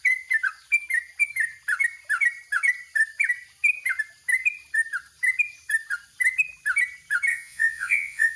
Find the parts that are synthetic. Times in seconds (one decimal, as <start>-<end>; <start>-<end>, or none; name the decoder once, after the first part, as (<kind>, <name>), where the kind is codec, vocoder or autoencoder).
7.3-8.4 (vocoder, Vocos)

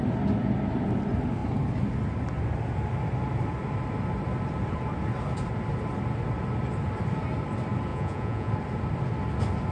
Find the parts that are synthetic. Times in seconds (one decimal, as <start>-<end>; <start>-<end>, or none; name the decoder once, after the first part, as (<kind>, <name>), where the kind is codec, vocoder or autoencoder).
7.9-8.5 (vocoder, Vocos)

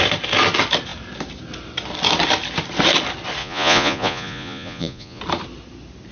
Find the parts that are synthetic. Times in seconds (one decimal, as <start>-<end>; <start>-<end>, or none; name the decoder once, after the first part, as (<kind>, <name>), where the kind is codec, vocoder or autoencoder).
3.4-5.2 (vocoder, Vocos)